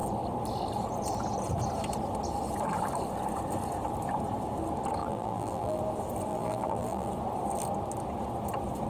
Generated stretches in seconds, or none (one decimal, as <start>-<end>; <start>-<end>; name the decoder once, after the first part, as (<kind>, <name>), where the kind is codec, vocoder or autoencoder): 5.0-5.8 (vocoder, BigVGAN v2); 6.3-7.1